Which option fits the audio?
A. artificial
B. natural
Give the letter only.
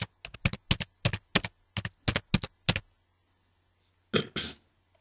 B